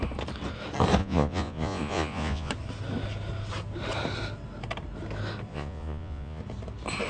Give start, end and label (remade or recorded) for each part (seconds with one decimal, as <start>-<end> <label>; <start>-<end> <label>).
0.0-1.0 recorded; 1.0-2.5 remade; 2.5-5.5 recorded; 5.5-6.4 remade; 6.4-7.1 recorded